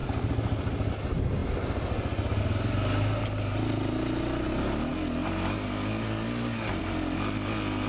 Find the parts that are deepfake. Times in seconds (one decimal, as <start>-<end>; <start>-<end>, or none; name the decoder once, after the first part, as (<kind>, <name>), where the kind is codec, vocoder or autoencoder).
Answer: none